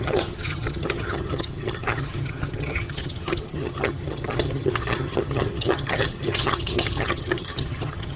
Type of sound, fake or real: fake